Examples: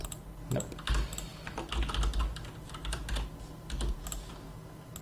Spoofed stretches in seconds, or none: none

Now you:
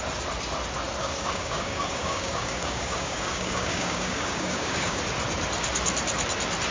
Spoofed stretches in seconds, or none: 1.0-5.0

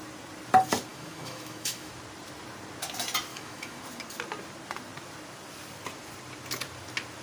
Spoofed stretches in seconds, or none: 0.9-1.9; 3.3-3.8